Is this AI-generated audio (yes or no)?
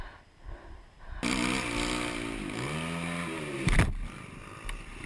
no